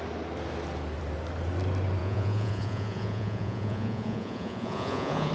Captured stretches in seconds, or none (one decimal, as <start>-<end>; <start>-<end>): 0.0-2.0